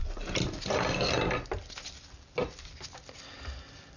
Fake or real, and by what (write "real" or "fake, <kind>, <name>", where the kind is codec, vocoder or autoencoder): real